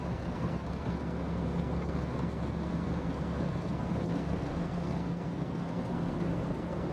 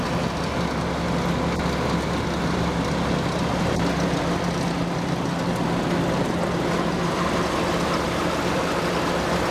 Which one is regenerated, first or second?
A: first